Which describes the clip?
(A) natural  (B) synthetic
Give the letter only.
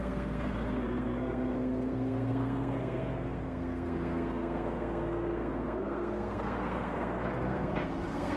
B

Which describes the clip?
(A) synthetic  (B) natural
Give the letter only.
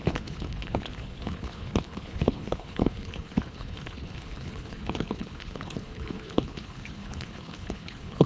A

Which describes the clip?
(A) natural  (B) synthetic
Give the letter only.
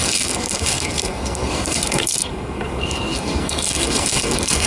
B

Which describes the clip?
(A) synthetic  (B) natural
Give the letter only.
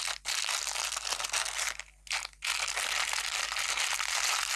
B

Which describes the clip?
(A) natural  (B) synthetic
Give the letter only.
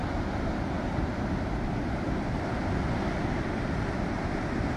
A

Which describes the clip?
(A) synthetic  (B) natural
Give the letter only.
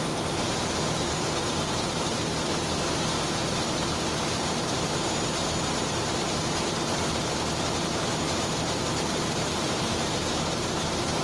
A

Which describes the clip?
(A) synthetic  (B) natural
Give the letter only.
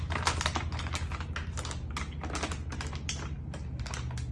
B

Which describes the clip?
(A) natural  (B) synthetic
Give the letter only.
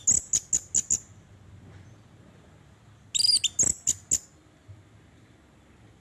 A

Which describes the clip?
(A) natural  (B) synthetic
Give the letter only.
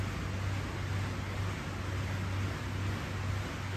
A